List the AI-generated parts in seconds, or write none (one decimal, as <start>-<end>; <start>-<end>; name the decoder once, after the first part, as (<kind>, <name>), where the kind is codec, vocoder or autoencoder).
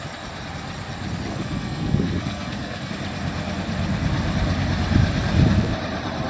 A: 1.3-2.9 (codec, SNAC)